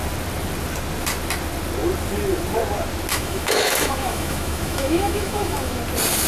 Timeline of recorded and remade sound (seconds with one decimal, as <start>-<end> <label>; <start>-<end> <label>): 0.0-3.1 recorded; 3.1-5.8 remade; 5.8-6.3 recorded